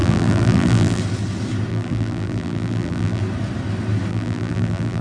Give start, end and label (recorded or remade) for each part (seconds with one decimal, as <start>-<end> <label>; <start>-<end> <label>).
0.0-1.0 remade; 1.0-1.7 recorded; 1.7-3.2 remade; 3.2-4.1 recorded; 4.1-5.0 remade